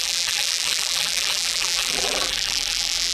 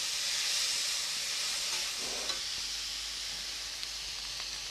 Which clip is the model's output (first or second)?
first